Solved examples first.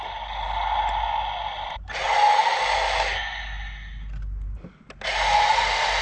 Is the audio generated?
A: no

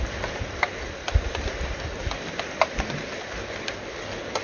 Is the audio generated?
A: no